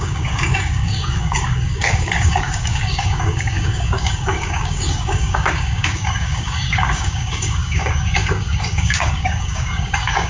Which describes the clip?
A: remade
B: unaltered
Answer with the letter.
A